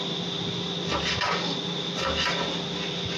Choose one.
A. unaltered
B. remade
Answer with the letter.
A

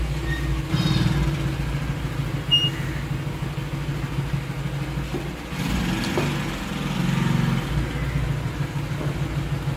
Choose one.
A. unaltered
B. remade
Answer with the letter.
A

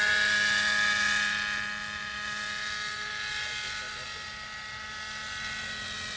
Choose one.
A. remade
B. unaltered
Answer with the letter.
B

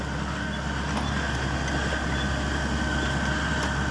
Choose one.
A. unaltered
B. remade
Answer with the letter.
A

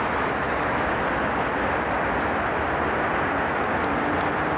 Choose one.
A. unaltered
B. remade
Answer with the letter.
A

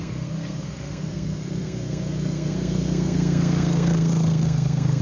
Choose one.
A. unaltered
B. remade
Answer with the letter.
B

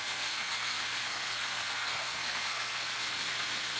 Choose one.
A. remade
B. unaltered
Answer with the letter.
A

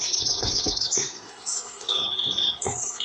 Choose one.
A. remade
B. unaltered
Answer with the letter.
A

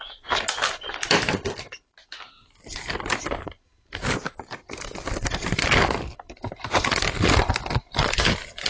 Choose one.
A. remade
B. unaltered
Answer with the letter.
B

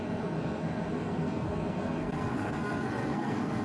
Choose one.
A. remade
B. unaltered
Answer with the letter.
A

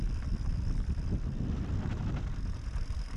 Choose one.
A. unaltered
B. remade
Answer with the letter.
A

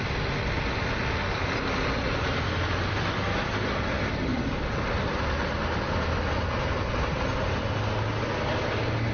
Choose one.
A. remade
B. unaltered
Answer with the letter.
B